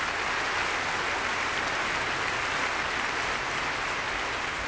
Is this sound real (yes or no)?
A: yes